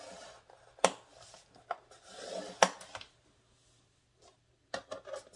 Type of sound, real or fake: real